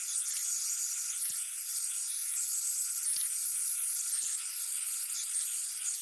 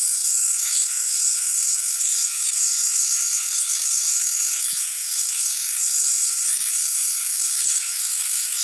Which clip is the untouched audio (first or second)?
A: first